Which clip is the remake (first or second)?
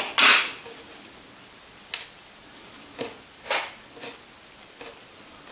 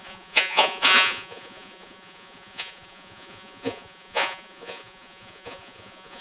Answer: second